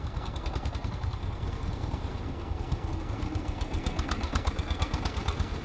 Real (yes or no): no